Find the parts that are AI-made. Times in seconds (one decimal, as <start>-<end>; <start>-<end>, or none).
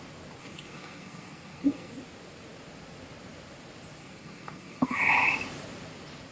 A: 0.4-1.9; 4.0-5.0